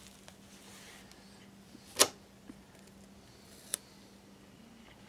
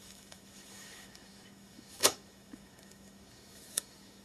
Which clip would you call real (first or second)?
first